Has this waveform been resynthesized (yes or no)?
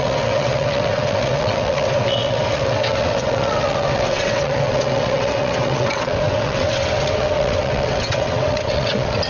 yes